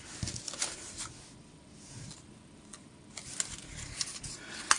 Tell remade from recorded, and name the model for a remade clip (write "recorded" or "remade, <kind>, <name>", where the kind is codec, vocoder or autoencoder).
recorded